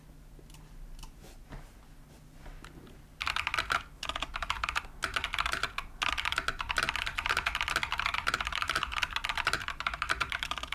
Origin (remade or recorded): recorded